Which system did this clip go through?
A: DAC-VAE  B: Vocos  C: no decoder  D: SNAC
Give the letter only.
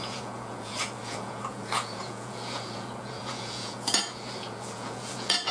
B